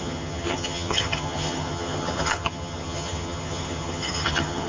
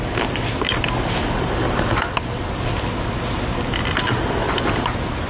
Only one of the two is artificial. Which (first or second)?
first